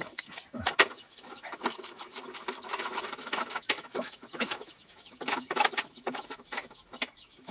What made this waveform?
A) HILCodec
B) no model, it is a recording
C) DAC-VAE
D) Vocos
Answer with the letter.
C